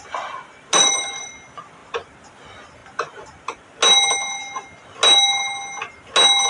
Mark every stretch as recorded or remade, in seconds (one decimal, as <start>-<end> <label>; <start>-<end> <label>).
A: 0.0-6.5 recorded